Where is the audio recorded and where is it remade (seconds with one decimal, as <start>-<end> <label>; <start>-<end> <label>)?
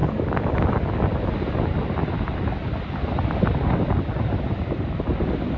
0.0-5.6 recorded